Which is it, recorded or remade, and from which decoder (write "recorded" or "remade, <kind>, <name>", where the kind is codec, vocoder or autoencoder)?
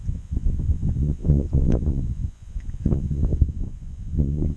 remade, vocoder, Vocos